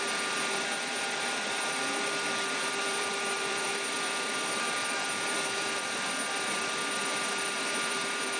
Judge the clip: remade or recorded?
remade